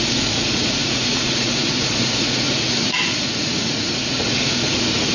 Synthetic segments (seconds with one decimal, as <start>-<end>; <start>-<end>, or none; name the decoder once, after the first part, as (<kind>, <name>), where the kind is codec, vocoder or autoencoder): 0.0-5.1 (vocoder, Vocos)